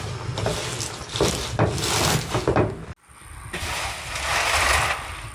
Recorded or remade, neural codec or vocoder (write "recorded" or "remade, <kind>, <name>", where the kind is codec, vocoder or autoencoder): recorded